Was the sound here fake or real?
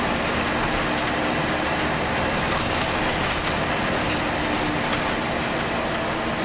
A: real